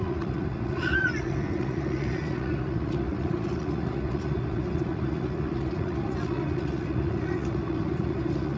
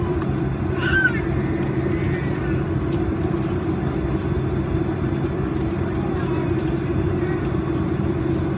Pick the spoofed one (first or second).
first